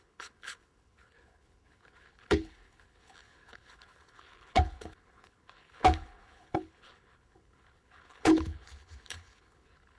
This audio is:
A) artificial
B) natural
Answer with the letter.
A